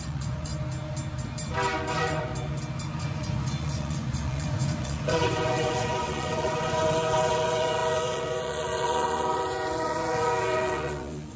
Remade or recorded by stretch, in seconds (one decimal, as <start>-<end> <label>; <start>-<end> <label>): 0.0-0.5 remade; 0.5-1.9 recorded; 1.9-2.3 remade; 2.3-3.0 recorded; 3.0-11.4 remade